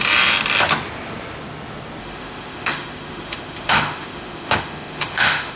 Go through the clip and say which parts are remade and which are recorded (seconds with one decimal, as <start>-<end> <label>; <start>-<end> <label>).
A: 0.0-2.0 recorded; 2.0-5.6 remade